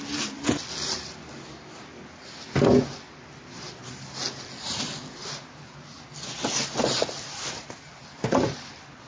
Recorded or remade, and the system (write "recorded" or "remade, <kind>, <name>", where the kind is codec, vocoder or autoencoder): recorded